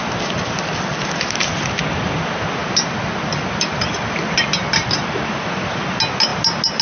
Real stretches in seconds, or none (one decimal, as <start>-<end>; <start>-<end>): 0.0-6.8